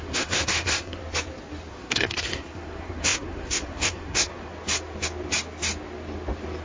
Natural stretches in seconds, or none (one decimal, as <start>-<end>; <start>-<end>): 1.0-1.7; 4.5-6.6